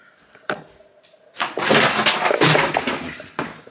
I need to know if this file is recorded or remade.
recorded